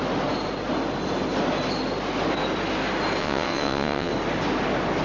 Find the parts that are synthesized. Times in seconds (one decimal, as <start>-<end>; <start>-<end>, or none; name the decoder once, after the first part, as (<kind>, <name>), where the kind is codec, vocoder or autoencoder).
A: 3.2-4.1 (vocoder, WaveNeXt)